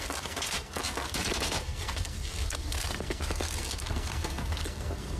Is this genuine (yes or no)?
no